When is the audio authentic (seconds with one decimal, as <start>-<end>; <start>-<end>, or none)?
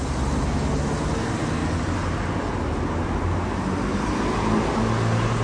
0.0-5.4